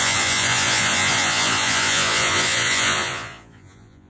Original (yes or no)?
no